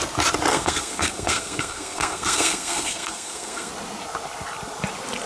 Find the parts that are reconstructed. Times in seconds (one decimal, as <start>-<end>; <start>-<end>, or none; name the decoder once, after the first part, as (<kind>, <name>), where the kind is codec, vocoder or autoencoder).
0.5-3.7 (codec, SNAC)